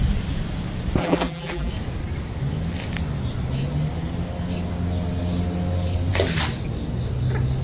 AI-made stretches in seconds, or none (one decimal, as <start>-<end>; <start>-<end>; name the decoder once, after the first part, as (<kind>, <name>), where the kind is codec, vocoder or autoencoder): 1.0-1.7 (vocoder, BigVGAN v2)